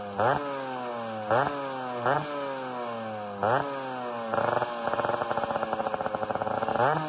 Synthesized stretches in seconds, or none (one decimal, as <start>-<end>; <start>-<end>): none